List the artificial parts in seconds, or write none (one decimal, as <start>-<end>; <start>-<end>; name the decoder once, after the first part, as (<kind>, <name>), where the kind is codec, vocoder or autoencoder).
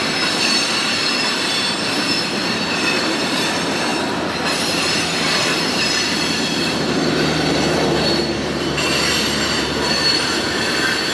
0.0-11.1 (vocoder, BigVGAN v2)